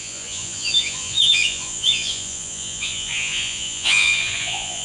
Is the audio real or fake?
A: fake